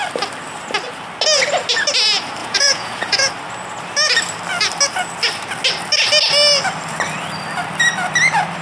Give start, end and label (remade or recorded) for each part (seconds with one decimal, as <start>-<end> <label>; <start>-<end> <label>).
0.0-2.4 recorded; 2.4-3.3 remade; 3.3-8.6 recorded